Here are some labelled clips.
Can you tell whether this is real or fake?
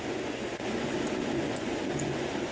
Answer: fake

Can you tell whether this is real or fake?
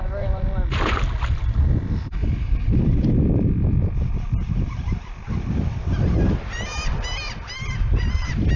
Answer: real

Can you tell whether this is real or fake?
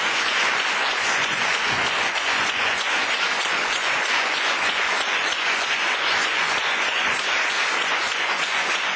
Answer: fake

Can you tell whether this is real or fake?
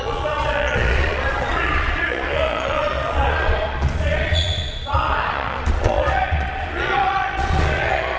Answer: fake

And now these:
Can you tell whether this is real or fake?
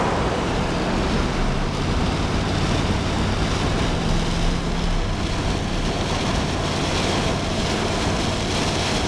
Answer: real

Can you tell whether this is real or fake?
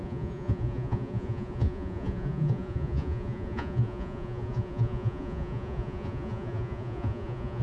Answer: fake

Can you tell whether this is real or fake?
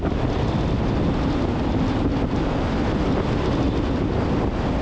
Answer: real